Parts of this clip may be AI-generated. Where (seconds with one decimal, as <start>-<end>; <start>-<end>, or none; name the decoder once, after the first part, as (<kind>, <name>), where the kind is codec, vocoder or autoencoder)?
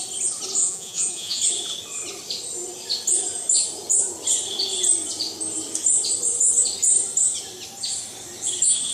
0.6-1.4 (vocoder, Vocos)